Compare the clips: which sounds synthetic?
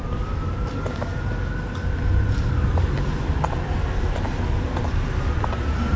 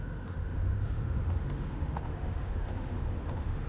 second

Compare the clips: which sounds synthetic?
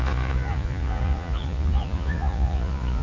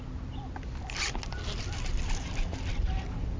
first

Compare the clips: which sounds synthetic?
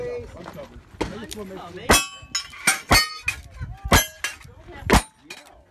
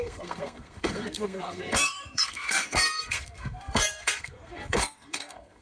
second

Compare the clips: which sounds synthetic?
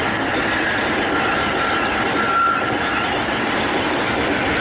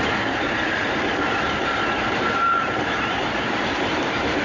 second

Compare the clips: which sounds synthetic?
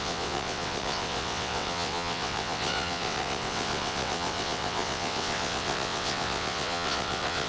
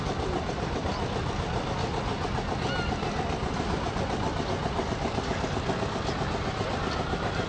first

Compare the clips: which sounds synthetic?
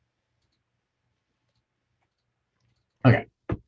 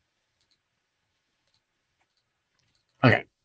second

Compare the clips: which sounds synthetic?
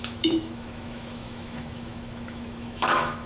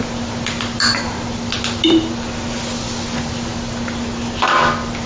first